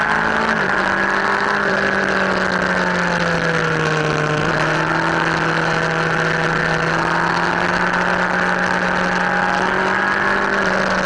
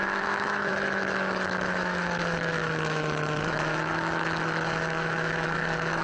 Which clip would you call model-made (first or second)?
second